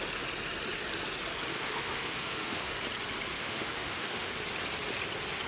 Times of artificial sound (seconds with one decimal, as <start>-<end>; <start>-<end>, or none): 1.5-2.7; 3.3-4.3